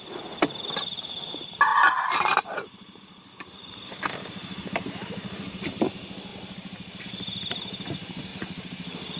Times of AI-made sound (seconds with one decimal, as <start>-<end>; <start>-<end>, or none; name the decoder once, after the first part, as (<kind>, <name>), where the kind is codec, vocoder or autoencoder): 1.7-5.8 (vocoder, BigVGAN v2); 6.3-7.0; 8.3-9.2